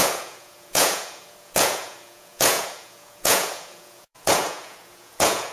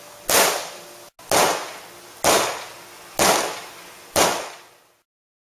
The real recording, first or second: second